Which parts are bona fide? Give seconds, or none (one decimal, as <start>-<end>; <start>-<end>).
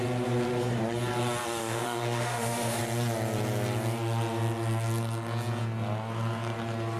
0.0-1.6; 2.8-7.0